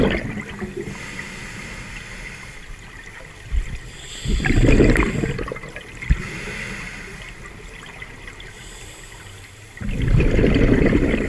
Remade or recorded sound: recorded